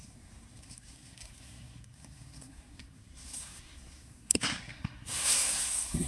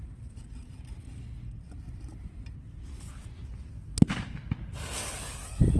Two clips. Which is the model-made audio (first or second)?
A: first